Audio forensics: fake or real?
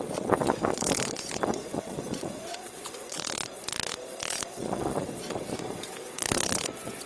fake